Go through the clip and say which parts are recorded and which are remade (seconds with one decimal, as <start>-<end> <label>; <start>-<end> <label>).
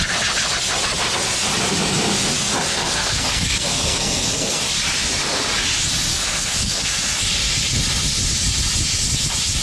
0.0-2.7 recorded; 2.7-4.6 remade; 4.6-6.1 recorded; 6.1-7.0 remade; 7.0-9.6 recorded